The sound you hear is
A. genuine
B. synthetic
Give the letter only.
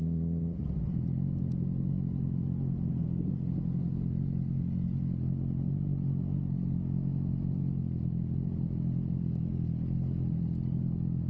A